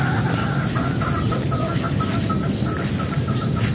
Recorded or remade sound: recorded